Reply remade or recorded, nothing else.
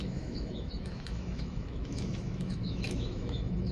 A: remade